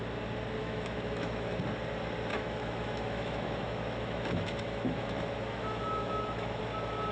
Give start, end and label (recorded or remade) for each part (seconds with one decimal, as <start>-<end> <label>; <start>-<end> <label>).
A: 0.0-0.6 recorded; 0.6-1.6 remade; 1.6-2.3 recorded; 2.3-6.6 remade; 6.6-7.1 recorded

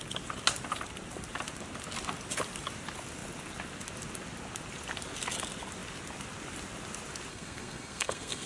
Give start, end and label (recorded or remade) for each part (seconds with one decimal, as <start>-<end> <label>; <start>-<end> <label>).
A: 0.0-7.3 recorded; 7.3-8.5 remade

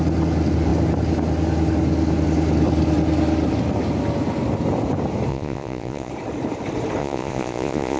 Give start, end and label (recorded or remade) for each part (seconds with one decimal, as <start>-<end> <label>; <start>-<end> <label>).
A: 0.0-5.3 recorded; 5.3-6.1 remade; 6.1-7.0 recorded; 7.0-8.0 remade

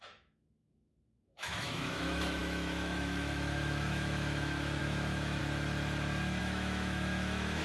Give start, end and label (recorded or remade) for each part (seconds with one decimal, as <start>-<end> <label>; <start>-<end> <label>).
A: 0.0-5.4 remade; 5.4-6.4 recorded; 6.4-7.6 remade

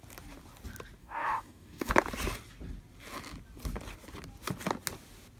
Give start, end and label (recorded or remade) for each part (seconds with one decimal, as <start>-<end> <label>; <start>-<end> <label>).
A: 0.0-1.0 recorded; 1.0-1.9 remade; 1.9-5.4 recorded

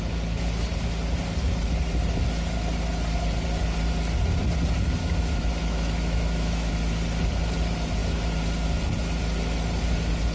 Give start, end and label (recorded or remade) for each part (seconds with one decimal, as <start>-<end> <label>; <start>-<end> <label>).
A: 0.0-5.0 recorded; 5.0-6.7 remade; 6.7-10.3 recorded

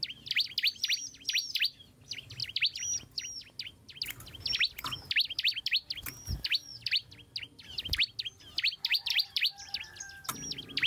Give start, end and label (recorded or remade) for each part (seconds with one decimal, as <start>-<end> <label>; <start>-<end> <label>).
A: 0.0-8.9 recorded; 8.9-9.5 remade; 9.5-10.9 recorded

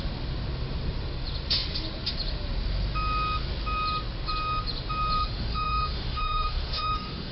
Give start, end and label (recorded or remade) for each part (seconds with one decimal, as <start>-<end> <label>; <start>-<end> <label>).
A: 0.0-5.2 recorded; 5.2-7.3 remade